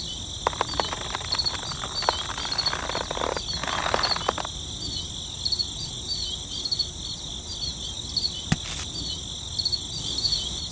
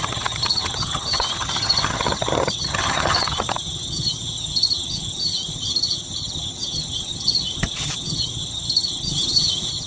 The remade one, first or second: second